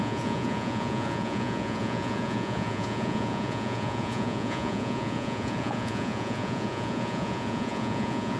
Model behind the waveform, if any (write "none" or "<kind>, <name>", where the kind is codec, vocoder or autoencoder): vocoder, Vocos